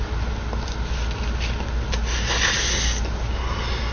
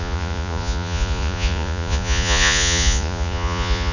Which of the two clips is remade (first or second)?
second